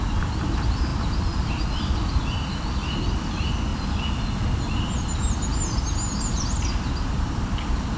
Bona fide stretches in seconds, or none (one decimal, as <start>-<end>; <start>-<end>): 0.0-8.0